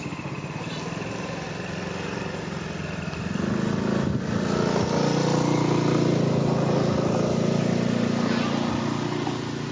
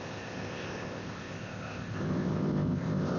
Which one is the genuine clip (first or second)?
first